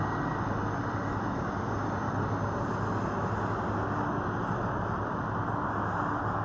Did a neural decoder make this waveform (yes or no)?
no